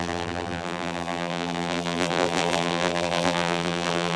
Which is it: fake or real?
fake